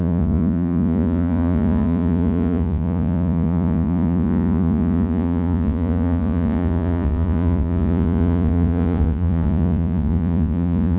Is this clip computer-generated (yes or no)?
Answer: yes